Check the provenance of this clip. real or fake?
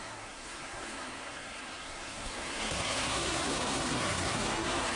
fake